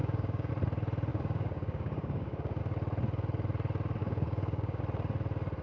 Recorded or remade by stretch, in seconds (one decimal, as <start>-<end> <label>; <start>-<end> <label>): 0.0-0.5 remade; 0.5-1.1 recorded; 1.1-2.6 remade; 2.6-4.0 recorded; 4.0-4.8 remade; 4.8-5.6 recorded